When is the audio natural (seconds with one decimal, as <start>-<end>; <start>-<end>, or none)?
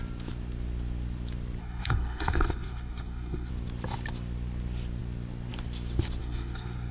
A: 0.0-1.6; 3.5-6.2